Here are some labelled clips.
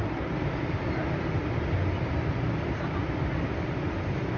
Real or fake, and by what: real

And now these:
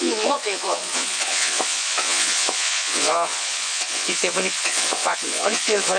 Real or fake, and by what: fake, vocoder, Vocos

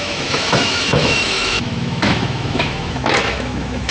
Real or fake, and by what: fake, autoencoder, DAC-VAE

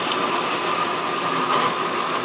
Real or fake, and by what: real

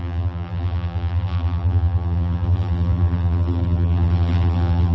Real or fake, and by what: fake, vocoder, BigVGAN v2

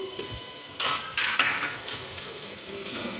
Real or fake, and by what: fake, codec, SNAC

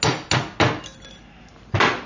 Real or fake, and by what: real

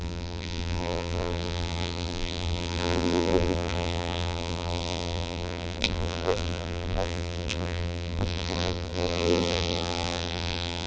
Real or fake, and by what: fake, vocoder, BigVGAN v2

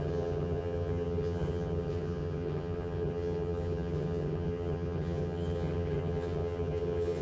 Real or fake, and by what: fake, vocoder, HiFi-GAN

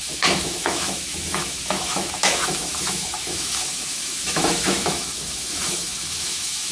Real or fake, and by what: fake, autoencoder, DAC-VAE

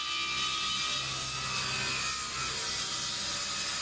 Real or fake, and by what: real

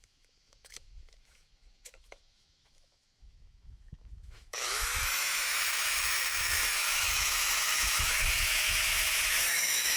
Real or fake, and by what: fake, autoencoder, DAC-VAE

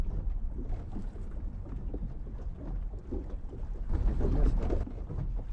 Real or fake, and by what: real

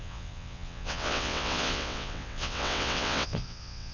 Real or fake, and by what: fake, vocoder, WaveNeXt